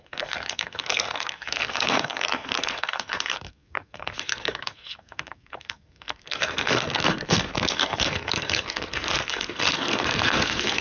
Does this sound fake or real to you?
fake